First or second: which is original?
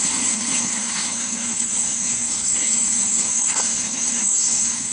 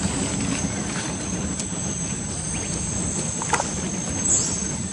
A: second